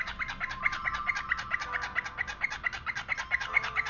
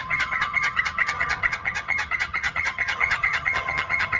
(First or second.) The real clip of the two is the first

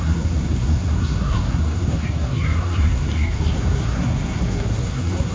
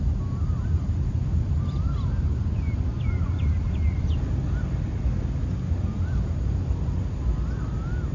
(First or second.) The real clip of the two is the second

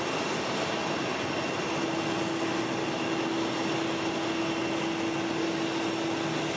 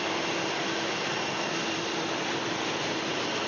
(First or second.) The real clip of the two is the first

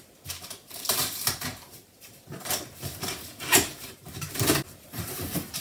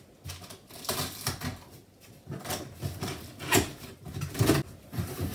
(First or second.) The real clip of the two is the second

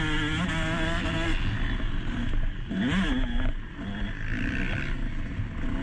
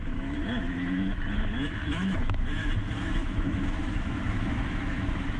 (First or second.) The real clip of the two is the first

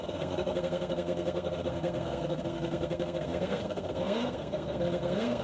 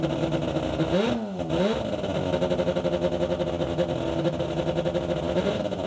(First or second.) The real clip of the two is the second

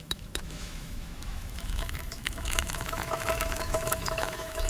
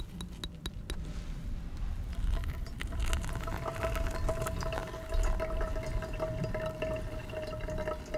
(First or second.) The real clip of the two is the second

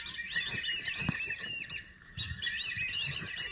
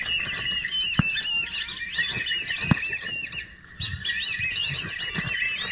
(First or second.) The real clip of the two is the second